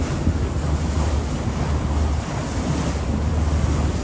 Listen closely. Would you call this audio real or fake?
real